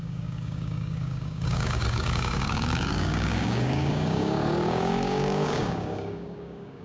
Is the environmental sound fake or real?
fake